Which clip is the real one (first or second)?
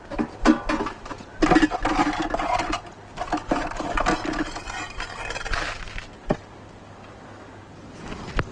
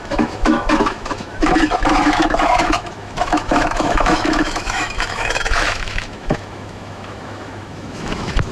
first